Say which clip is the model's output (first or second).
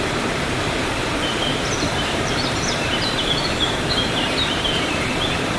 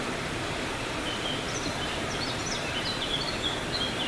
first